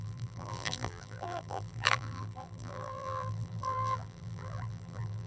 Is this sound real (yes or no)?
no